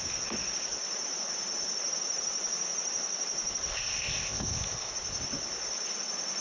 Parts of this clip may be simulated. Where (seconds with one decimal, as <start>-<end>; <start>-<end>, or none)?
3.7-4.9

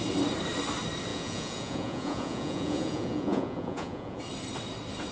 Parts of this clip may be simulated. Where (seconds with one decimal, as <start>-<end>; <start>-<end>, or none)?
1.1-4.2

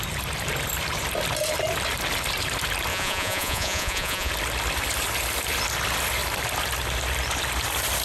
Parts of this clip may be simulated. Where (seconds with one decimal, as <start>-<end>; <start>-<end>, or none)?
2.9-4.3

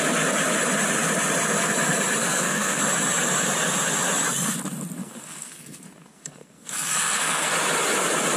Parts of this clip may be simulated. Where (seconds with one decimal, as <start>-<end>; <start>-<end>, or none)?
2.2-2.8; 5.0-7.5